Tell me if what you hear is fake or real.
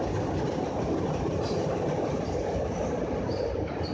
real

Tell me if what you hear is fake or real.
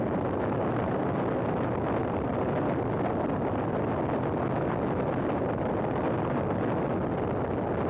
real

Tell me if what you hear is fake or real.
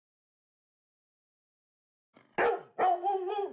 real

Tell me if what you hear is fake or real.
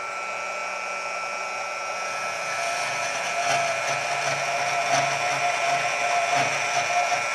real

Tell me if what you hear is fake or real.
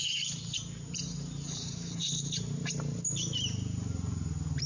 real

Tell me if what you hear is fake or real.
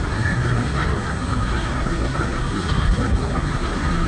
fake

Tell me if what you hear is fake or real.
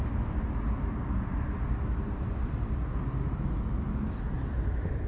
real